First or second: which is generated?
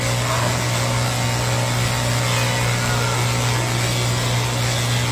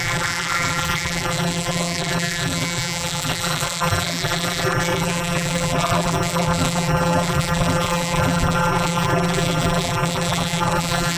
second